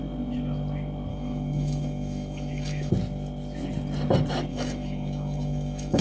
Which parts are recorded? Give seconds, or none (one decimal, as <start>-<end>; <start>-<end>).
0.0-1.1; 2.9-4.5